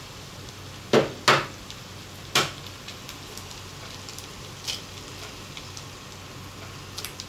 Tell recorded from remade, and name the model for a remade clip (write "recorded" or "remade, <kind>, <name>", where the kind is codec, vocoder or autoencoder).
recorded